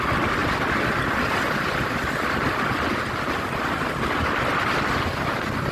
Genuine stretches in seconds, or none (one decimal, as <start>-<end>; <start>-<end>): 0.0-5.7